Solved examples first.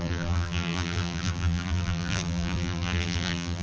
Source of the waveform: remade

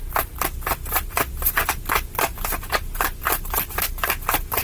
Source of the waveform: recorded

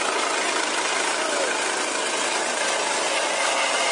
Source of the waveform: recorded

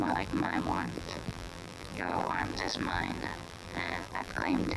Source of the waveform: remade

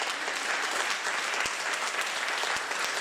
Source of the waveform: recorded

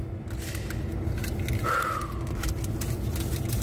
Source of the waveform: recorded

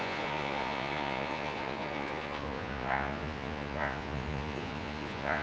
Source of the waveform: remade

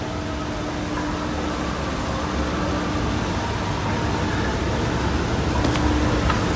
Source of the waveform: recorded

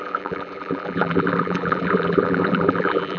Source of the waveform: remade